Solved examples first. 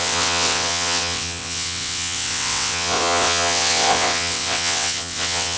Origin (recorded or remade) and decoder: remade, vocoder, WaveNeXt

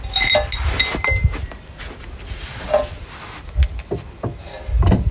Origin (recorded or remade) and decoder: recorded